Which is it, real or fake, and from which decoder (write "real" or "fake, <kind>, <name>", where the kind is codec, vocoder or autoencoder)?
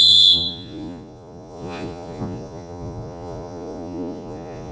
fake, vocoder, Vocos